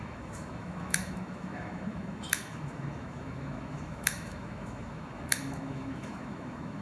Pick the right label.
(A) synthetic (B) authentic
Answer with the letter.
A